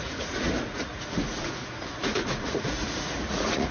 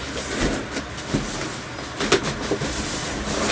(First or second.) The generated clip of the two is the first